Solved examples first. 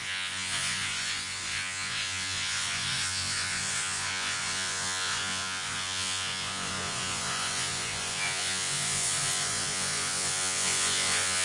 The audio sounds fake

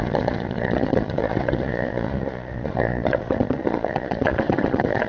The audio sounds fake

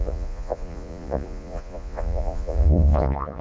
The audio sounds fake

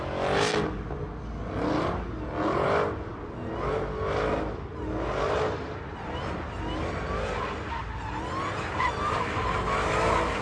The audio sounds real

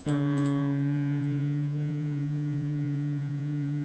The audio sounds fake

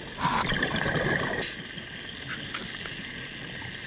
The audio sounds real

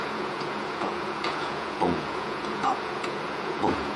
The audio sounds fake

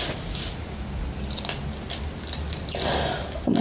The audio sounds real